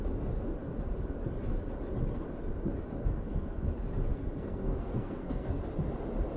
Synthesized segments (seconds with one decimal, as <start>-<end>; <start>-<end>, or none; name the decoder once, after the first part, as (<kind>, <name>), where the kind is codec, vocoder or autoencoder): 3.0-3.6 (codec, SNAC); 4.1-5.6